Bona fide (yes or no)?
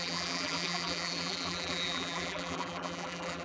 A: no